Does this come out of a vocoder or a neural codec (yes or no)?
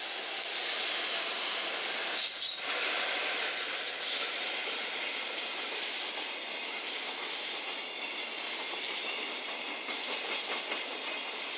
no